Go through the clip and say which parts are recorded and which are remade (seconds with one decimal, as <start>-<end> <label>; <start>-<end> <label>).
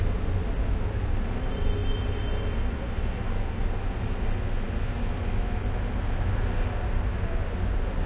0.0-8.1 recorded